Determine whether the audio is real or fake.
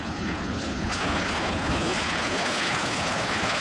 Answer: fake